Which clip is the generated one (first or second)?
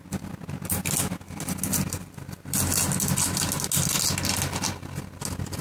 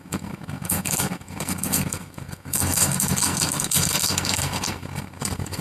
second